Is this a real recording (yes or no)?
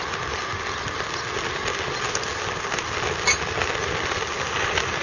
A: yes